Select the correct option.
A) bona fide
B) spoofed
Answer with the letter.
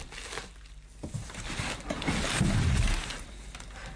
A